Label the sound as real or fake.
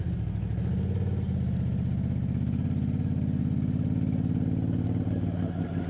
real